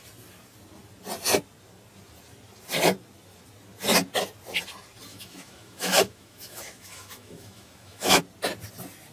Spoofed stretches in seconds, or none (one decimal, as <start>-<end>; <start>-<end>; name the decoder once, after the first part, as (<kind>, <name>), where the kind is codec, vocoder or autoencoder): 5.1-8.2 (autoencoder, DAC-VAE)